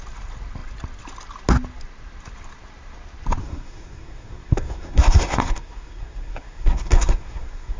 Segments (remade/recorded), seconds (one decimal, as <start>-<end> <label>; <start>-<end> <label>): 0.0-3.4 recorded; 3.4-7.8 remade